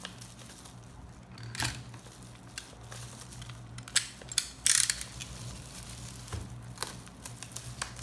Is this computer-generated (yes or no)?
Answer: no